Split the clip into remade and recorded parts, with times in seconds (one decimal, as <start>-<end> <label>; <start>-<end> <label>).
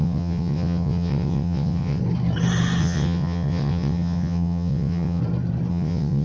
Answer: 0.0-2.0 remade; 2.0-2.8 recorded; 2.8-5.2 remade; 5.2-5.7 recorded; 5.7-6.2 remade